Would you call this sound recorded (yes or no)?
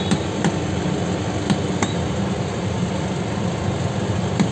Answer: yes